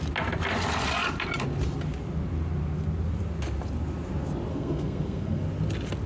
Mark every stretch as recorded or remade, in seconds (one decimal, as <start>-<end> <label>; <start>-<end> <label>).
0.0-4.5 recorded; 4.5-5.4 remade; 5.4-6.1 recorded